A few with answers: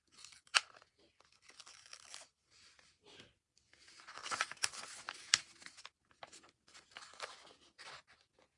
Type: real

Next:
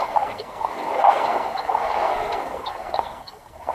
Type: fake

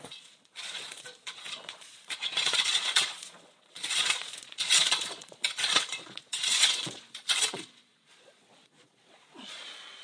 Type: fake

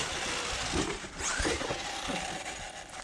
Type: real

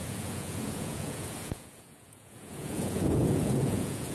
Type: fake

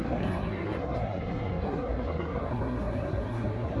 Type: fake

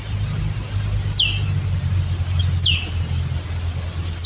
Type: real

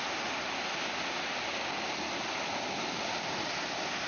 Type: real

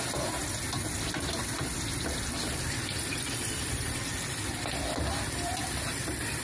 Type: fake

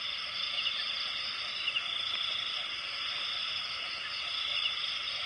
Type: real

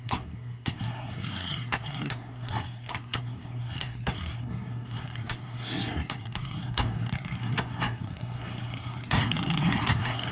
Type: fake